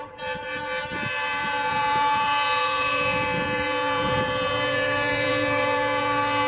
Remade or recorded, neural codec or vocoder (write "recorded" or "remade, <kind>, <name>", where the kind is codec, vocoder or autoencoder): remade, vocoder, Vocos